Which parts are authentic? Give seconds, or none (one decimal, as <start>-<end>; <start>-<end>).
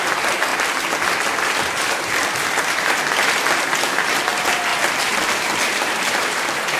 0.0-0.5; 3.0-4.7